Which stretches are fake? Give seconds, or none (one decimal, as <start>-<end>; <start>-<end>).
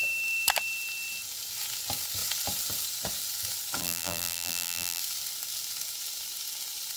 3.8-5.0